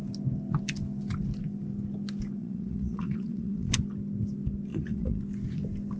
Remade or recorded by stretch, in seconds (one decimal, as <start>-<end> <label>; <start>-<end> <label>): 0.0-2.4 recorded; 2.4-3.7 remade; 3.7-4.7 recorded; 4.7-5.2 remade; 5.2-6.0 recorded